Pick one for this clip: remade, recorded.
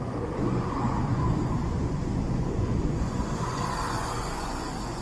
remade